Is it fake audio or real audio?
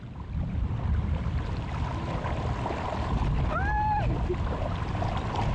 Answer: real